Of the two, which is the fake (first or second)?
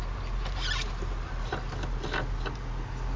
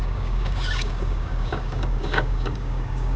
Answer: second